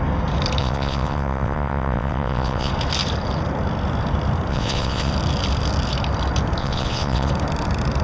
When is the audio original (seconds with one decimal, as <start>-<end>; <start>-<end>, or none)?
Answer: 0.0-0.6; 2.7-4.5; 5.1-6.6; 7.3-8.0